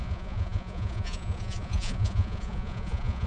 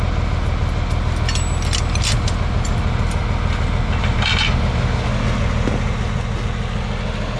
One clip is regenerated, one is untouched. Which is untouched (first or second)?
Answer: second